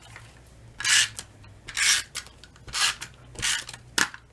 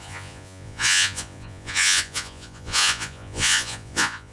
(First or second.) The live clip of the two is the first